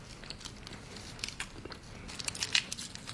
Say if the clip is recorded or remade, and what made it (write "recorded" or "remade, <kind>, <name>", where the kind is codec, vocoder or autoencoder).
recorded